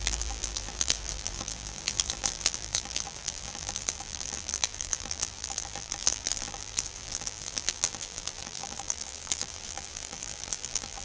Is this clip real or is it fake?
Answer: fake